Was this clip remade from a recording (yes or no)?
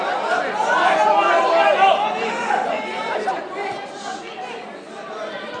no